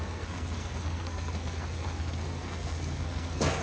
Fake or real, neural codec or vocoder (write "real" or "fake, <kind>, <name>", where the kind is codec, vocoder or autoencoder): fake, codec, SNAC